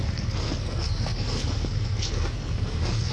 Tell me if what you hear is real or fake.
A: fake